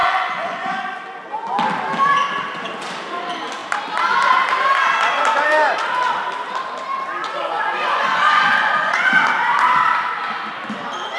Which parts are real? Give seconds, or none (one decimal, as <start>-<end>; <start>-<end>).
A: 1.0-7.2; 9.1-11.2